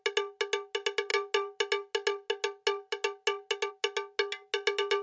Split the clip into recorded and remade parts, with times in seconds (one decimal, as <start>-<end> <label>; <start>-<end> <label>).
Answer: 0.0-5.0 recorded